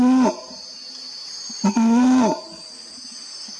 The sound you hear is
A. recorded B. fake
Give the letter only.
A